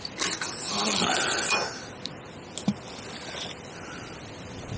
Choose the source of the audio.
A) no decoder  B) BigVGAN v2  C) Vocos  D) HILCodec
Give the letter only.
A